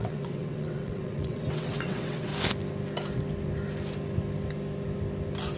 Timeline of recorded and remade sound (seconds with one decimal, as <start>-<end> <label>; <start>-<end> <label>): 0.0-2.3 remade; 2.3-5.6 recorded